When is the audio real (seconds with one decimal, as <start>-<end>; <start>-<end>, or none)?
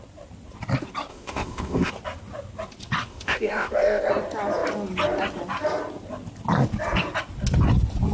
0.0-1.1; 1.9-3.1; 4.1-8.1